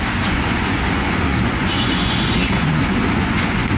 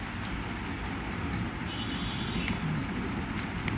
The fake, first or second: first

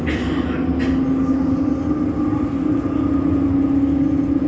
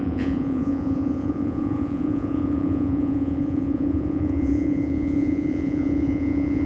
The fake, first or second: second